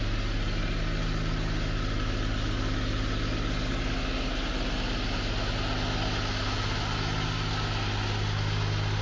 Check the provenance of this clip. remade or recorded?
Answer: recorded